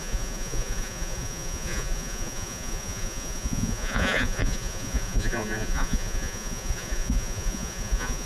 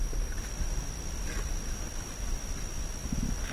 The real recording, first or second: second